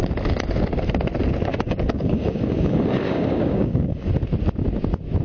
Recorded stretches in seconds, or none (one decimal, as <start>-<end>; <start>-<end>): 0.0-1.5; 4.1-5.2